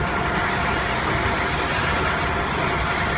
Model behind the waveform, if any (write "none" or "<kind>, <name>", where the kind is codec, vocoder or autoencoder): none